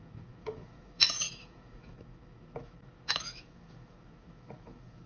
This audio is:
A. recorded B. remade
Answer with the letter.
B